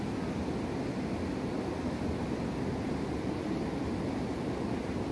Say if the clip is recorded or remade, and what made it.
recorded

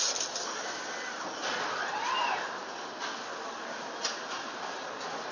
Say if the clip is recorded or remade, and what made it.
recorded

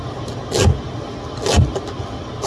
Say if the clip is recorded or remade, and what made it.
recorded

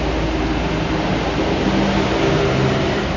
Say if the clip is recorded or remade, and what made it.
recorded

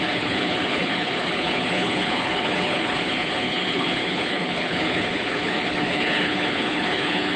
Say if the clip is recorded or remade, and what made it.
remade, codec, HILCodec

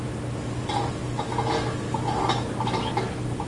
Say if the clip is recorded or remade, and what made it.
recorded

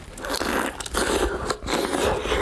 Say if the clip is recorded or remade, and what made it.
recorded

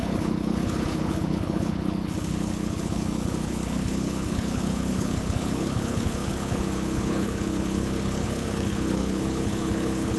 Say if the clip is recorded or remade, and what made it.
remade, codec, HILCodec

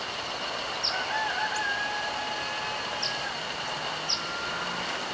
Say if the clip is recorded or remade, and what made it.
recorded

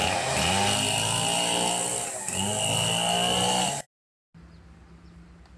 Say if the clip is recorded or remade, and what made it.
recorded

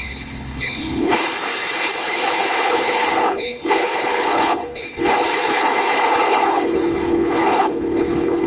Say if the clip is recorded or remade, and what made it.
remade, codec, HILCodec